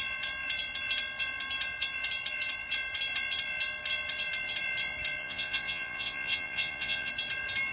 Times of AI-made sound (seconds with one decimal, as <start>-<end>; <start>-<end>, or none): 5.2-7.1